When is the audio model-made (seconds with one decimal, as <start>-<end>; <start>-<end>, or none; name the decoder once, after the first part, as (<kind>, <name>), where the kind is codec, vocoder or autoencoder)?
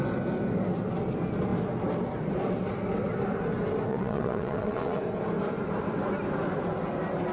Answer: 3.9-5.0 (vocoder, WaveNeXt)